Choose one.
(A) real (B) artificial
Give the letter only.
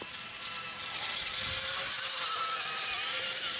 A